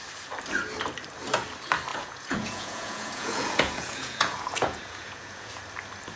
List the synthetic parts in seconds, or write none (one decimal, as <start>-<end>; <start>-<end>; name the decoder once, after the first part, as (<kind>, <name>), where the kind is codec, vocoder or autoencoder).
1.9-5.6 (vocoder, Vocos)